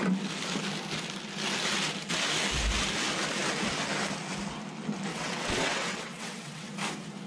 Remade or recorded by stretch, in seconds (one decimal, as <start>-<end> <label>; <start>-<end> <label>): 0.0-5.1 recorded; 5.1-6.7 remade; 6.7-7.3 recorded